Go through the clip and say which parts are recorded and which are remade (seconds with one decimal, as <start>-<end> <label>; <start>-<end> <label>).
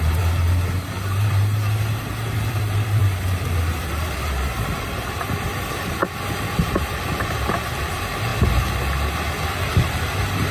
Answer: 0.0-3.0 remade; 3.0-3.8 recorded; 3.8-6.0 remade; 6.0-6.6 recorded; 6.6-8.3 remade; 8.3-9.6 recorded; 9.6-10.5 remade